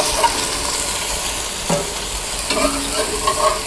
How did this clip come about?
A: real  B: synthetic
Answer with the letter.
A